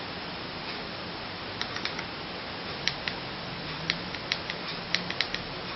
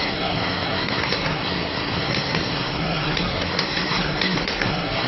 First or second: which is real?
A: first